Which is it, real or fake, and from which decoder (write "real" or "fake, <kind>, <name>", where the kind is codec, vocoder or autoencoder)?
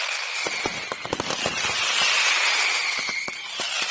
real